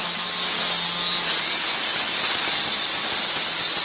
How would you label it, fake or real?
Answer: real